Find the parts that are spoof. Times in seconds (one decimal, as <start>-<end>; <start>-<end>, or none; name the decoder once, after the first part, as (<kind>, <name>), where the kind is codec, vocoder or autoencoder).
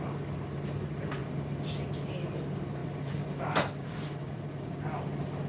2.8-4.7 (vocoder, BigVGAN v2)